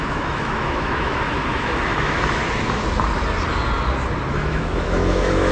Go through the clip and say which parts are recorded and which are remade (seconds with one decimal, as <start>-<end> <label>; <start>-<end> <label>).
0.0-2.4 remade; 2.4-4.3 recorded; 4.3-5.5 remade